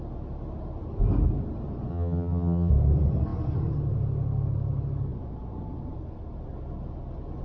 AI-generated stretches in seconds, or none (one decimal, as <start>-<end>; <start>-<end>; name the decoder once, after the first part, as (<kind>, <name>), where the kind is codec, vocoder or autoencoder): 1.9-2.7 (vocoder, HiFi-GAN)